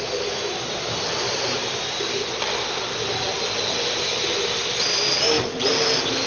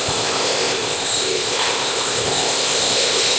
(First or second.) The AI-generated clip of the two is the second